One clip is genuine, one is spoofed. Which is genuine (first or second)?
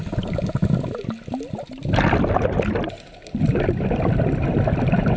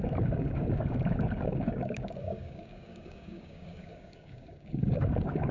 first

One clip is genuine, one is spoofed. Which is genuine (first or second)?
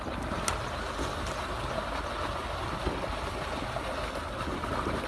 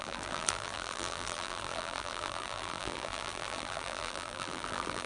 first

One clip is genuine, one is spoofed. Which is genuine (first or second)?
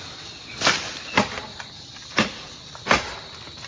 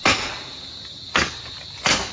first